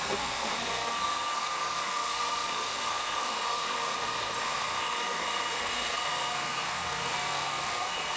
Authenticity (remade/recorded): remade